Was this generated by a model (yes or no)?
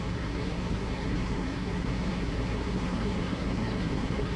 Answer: yes